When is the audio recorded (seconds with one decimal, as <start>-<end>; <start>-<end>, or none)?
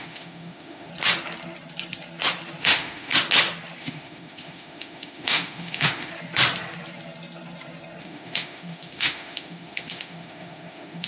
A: 0.9-2.6; 3.1-3.8; 6.1-8.0